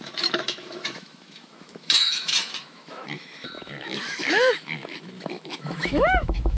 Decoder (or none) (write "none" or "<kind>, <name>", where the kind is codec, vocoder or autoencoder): autoencoder, DAC-VAE